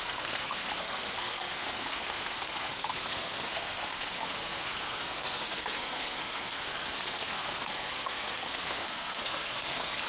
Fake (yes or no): yes